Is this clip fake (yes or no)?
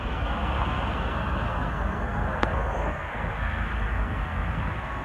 yes